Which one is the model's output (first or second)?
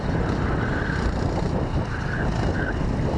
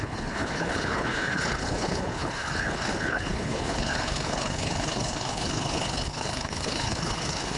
second